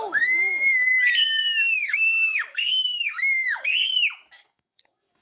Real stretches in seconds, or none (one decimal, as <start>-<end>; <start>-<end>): 0.9-1.4; 3.7-4.4